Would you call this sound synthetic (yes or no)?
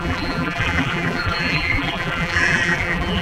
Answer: yes